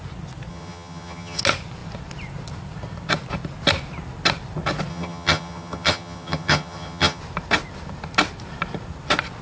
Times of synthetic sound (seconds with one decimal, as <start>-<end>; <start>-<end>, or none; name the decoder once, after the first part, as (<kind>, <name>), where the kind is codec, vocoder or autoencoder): 0.5-1.4 (vocoder, HiFi-GAN); 4.9-7.2